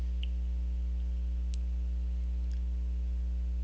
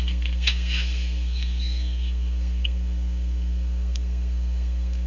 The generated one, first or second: second